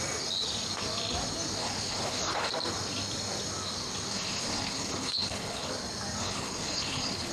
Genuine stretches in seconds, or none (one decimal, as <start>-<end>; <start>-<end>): 0.0-1.6; 2.5-4.1; 5.7-6.2